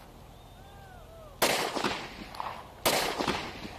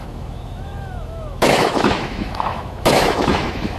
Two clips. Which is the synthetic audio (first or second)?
second